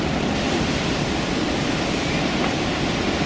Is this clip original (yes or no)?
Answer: yes